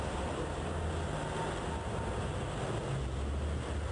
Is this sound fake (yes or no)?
no